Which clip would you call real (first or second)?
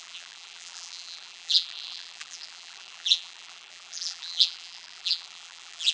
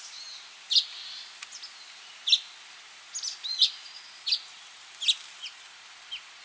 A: second